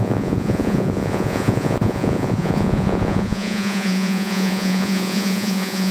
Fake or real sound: fake